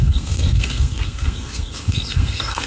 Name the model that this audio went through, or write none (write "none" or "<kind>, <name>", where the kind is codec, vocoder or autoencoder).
codec, SNAC